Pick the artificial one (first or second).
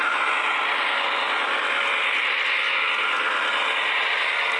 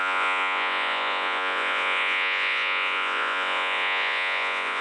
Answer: second